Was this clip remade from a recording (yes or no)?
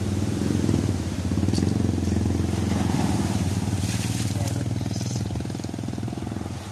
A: no